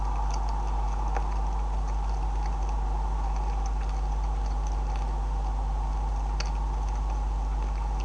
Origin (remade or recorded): recorded